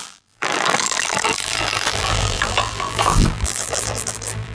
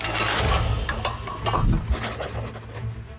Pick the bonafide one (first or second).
second